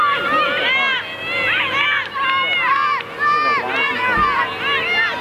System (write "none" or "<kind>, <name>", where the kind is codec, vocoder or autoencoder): none